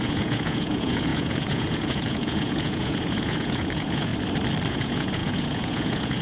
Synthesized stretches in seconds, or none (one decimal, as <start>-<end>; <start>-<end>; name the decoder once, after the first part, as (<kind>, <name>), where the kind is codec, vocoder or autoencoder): 0.0-4.1 (vocoder, Vocos); 4.7-6.2